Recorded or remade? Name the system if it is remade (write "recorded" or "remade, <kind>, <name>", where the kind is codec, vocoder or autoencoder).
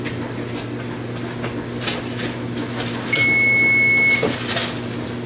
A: recorded